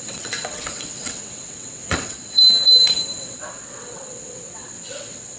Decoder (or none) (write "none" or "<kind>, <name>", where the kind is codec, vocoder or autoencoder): vocoder, WaveNeXt